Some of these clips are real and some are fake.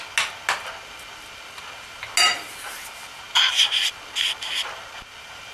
real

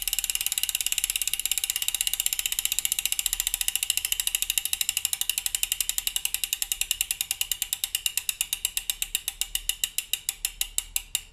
real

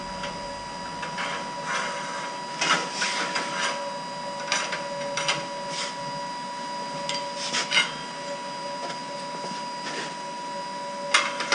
real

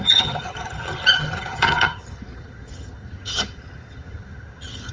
fake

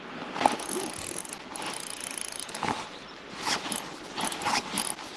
real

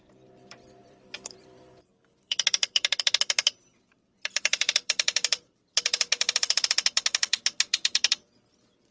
fake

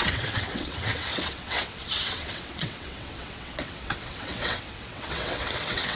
fake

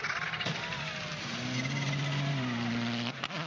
real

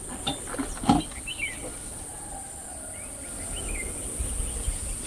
real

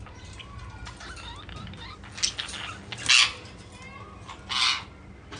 real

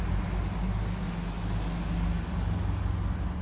real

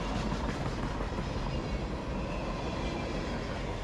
real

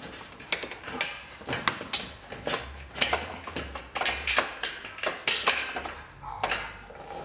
real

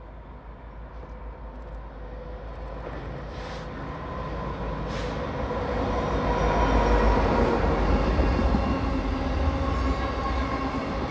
real